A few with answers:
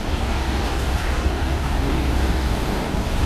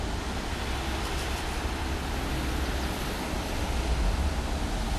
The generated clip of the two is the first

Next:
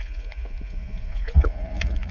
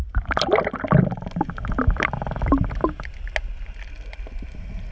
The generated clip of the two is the first